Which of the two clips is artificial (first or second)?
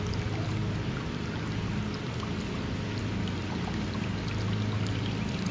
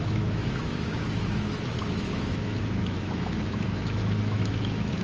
second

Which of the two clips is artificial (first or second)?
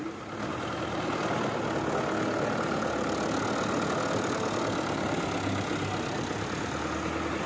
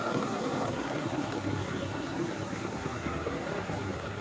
second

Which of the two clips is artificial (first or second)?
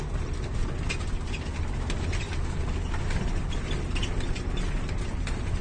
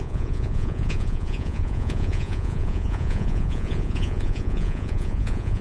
second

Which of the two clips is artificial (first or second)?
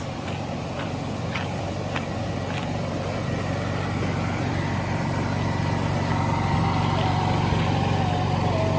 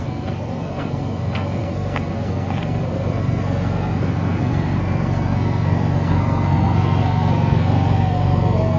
second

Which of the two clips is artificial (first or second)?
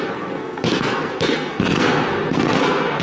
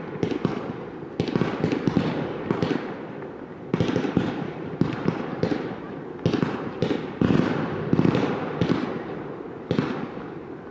first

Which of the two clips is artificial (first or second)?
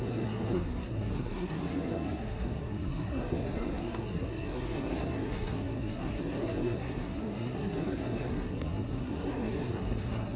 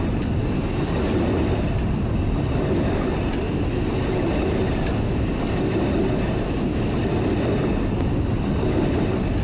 first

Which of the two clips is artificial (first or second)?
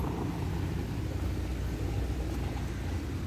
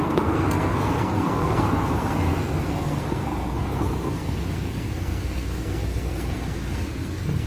second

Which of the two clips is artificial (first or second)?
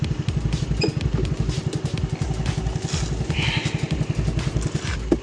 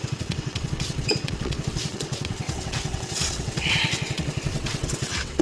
second